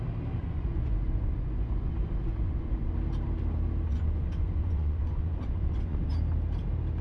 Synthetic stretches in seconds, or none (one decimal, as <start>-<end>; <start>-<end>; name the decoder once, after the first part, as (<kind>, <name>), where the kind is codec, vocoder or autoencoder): 0.4-2.9 (vocoder, Vocos); 3.9-6.1